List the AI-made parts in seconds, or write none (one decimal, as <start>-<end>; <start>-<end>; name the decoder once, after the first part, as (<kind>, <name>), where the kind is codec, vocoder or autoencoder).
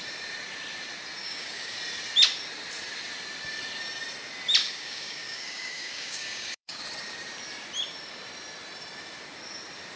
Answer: 1.2-1.8 (codec, DAC); 4.6-6.8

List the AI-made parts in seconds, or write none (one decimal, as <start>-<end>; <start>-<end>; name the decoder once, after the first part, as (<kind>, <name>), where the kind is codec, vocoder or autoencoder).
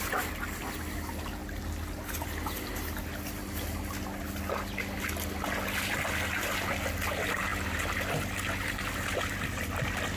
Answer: none